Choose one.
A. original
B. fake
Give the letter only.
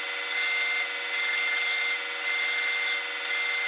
A